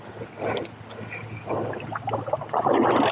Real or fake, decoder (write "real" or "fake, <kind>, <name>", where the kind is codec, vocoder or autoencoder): real